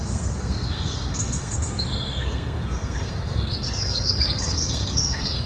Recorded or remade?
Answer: remade